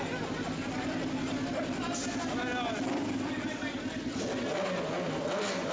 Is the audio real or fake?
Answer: real